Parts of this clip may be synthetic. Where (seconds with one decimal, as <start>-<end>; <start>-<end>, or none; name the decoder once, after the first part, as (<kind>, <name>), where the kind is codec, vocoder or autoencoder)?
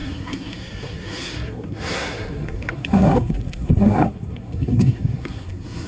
0.0-5.9 (codec, SNAC)